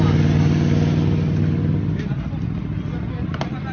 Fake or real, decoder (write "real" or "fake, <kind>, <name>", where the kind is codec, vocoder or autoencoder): real